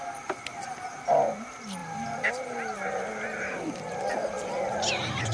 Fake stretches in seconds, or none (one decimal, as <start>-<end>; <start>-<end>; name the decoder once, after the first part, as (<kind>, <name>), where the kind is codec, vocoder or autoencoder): none